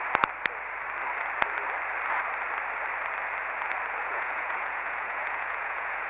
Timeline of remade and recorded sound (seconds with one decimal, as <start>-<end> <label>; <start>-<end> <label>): 0.0-4.0 recorded; 4.0-6.1 remade